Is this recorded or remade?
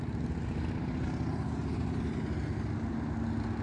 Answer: recorded